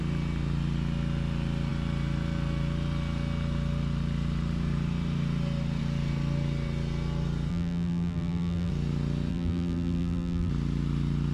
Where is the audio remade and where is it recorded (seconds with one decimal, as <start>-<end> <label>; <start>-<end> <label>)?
0.0-7.5 recorded; 7.5-8.7 remade; 8.7-9.3 recorded; 9.3-10.5 remade; 10.5-11.3 recorded